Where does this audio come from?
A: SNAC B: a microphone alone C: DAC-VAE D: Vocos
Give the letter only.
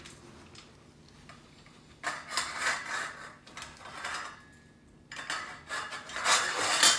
B